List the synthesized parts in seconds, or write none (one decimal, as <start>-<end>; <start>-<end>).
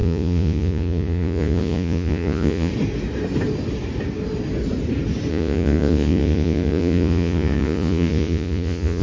0.0-2.7; 5.3-9.0